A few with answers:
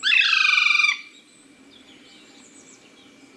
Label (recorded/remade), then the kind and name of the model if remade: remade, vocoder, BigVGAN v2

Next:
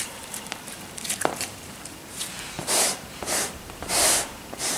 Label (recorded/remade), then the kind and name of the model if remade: remade, vocoder, BigVGAN v2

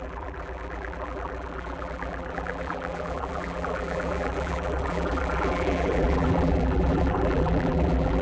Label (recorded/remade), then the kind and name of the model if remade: remade, vocoder, BigVGAN v2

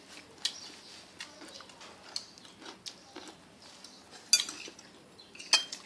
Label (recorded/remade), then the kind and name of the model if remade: recorded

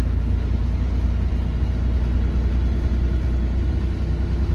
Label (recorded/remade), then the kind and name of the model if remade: recorded